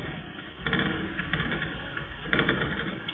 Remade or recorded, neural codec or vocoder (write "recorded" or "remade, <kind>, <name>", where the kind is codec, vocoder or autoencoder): remade, codec, DAC